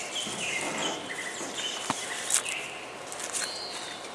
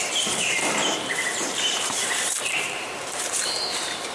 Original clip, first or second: first